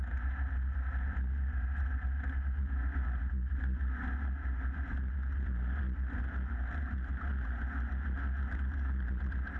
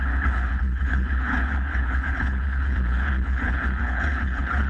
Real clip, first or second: first